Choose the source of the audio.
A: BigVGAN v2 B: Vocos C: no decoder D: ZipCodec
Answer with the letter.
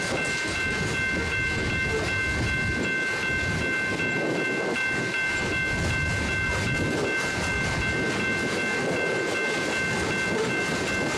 C